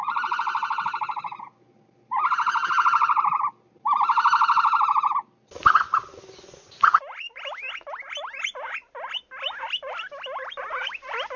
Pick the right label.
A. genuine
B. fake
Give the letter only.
A